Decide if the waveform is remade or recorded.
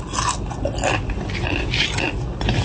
recorded